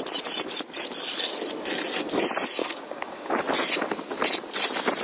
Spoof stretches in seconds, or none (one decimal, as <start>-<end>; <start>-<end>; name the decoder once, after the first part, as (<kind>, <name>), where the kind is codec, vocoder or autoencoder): 2.6-3.3 (codec, DAC)